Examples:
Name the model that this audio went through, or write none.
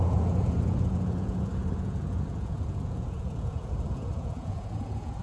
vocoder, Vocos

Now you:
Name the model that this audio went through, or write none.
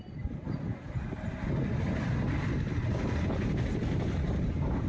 none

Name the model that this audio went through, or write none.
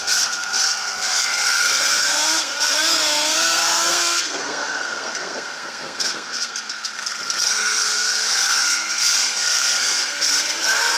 codec, SNAC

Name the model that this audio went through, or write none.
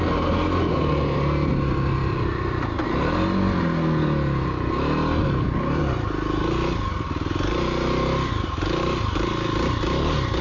none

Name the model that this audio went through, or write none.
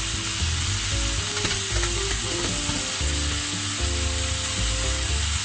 none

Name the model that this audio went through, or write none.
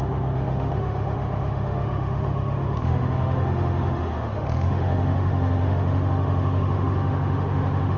autoencoder, DAC-VAE